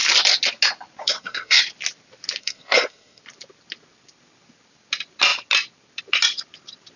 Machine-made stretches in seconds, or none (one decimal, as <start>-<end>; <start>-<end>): 1.0-1.6; 2.4-3.2